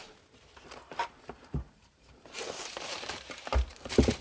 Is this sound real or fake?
fake